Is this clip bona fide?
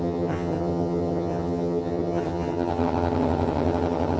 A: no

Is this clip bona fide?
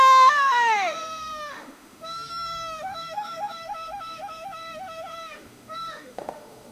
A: no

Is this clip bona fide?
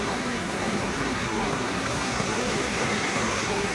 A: no